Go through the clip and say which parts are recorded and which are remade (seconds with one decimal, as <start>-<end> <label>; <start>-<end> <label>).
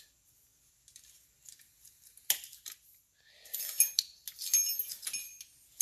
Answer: 0.0-5.8 recorded